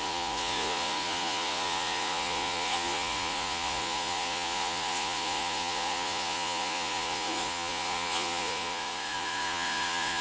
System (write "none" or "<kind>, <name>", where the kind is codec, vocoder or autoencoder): vocoder, Vocos